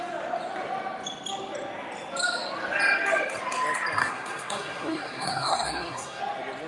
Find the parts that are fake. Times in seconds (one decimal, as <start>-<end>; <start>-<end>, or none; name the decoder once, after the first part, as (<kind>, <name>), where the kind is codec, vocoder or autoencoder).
4.0-6.2 (codec, SNAC)